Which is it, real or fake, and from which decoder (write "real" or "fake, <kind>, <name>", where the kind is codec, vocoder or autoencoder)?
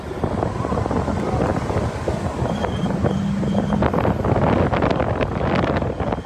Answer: real